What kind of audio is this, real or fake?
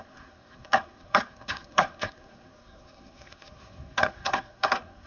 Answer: fake